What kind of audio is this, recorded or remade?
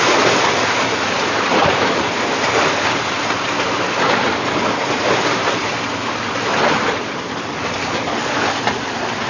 recorded